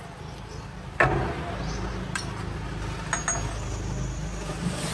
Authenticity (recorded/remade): recorded